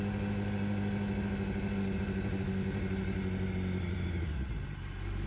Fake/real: real